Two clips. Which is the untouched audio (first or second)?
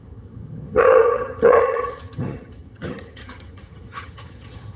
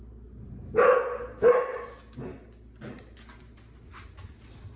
second